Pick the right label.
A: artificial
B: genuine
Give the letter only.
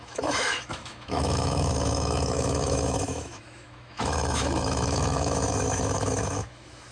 A